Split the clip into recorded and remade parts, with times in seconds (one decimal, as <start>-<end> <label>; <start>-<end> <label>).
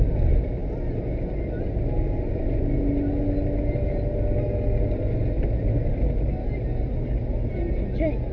0.0-8.3 recorded